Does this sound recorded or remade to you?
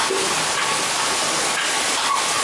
recorded